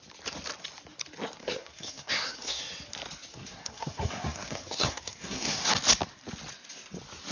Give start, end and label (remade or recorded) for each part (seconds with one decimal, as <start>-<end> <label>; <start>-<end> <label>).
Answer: 0.0-1.4 recorded; 1.4-2.6 remade; 2.6-3.3 recorded; 3.3-5.7 remade; 5.7-7.3 recorded